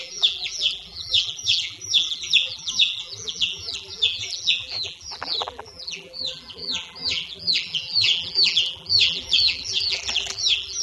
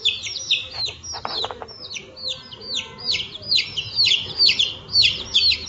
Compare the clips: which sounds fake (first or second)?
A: first